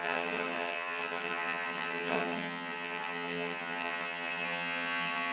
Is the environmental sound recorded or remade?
remade